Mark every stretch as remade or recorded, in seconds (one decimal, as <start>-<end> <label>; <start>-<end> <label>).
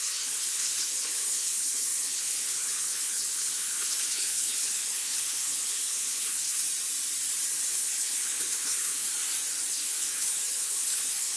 0.0-6.6 remade; 6.6-7.7 recorded; 7.7-9.1 remade; 9.1-9.7 recorded; 9.7-11.4 remade